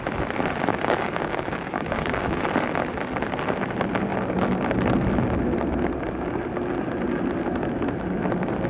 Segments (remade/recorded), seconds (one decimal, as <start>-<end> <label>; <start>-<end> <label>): 0.0-0.7 recorded; 0.7-2.4 remade; 2.4-8.7 recorded